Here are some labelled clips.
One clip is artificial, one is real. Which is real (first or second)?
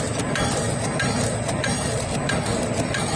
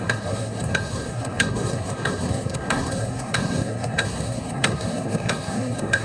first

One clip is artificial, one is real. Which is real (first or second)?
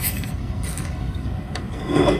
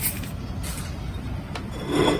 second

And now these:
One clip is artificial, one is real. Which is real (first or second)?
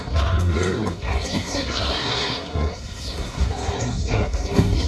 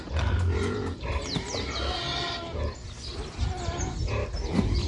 second